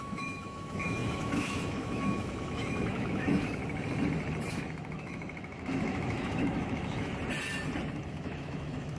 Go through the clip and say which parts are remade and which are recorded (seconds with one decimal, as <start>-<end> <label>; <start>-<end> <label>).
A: 0.0-3.6 remade; 3.6-4.5 recorded; 4.5-7.1 remade; 7.1-8.1 recorded; 8.1-9.0 remade